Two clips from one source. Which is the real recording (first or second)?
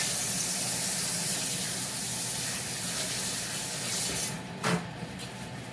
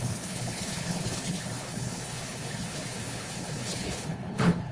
first